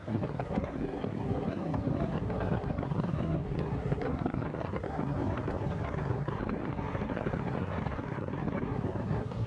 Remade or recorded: remade